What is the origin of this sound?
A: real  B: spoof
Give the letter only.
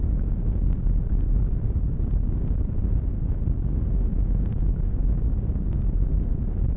B